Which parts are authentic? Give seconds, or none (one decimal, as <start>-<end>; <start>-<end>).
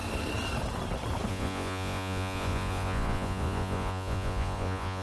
0.0-1.3